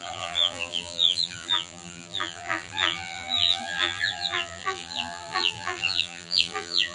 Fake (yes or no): yes